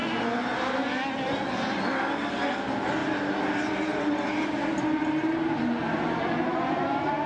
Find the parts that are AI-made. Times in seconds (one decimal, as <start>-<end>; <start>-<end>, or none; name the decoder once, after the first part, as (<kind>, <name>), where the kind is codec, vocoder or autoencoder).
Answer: 3.0-7.3 (vocoder, BigVGAN v2)